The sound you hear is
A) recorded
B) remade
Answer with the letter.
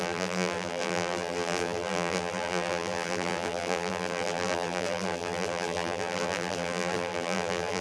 B